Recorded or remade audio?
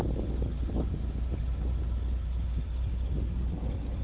recorded